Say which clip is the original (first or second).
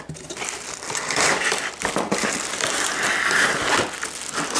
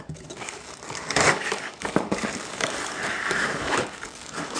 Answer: first